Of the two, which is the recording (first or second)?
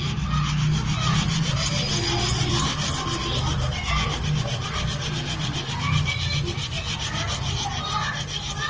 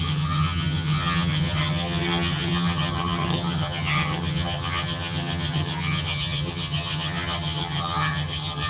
first